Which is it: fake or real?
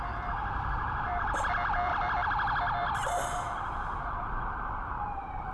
fake